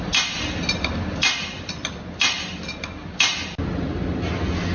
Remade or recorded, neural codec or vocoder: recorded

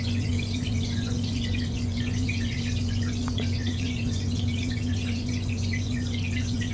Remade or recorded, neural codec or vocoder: remade, vocoder, Vocos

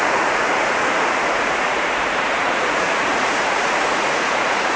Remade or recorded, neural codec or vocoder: remade, vocoder, Vocos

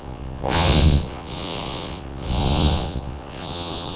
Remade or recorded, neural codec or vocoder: remade, vocoder, Vocos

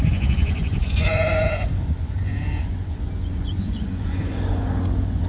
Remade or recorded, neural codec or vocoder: remade, vocoder, Vocos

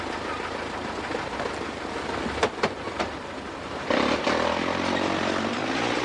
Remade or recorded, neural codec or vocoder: recorded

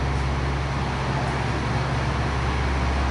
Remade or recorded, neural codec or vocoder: recorded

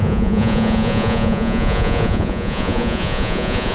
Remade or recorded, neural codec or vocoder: remade, vocoder, Vocos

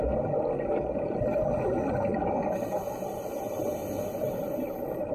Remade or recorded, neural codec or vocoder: recorded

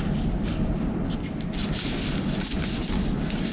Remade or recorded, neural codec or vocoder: recorded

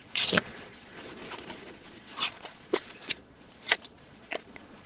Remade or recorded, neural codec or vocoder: remade, vocoder, Vocos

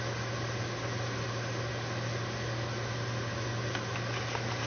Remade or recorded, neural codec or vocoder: recorded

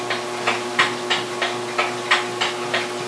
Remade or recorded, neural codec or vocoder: recorded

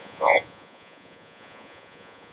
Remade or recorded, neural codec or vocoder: remade, vocoder, Vocos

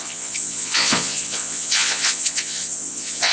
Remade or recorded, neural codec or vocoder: remade, vocoder, Vocos